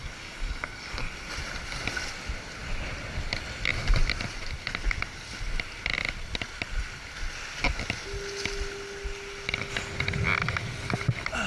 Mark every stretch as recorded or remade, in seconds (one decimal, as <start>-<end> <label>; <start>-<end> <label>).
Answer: 0.0-1.1 remade; 1.1-11.5 recorded